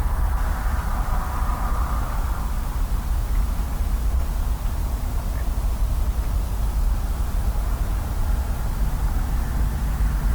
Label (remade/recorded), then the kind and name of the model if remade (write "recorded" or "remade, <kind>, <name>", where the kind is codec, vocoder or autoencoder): recorded